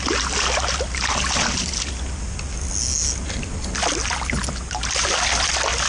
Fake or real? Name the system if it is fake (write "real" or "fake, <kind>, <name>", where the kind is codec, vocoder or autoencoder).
real